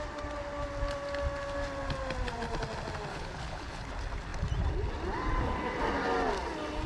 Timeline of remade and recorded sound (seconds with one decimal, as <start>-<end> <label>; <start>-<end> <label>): 0.0-3.1 recorded; 3.1-3.9 remade; 3.9-6.9 recorded